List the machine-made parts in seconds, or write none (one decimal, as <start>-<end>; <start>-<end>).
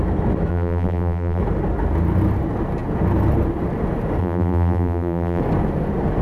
0.5-1.4; 4.2-5.4